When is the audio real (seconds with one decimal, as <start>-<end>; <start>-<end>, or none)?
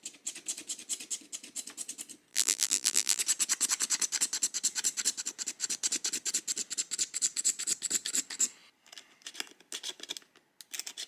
0.0-2.3; 3.2-11.1